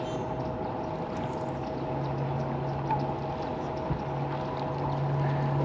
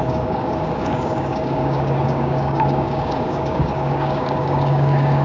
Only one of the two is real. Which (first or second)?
first